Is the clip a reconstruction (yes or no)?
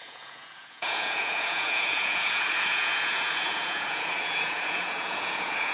yes